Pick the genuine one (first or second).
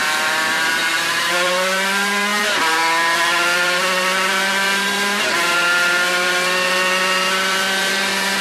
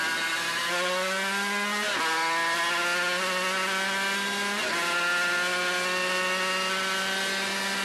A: second